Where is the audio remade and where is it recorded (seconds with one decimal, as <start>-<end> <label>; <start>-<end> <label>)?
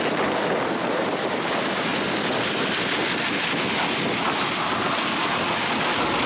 0.0-6.3 recorded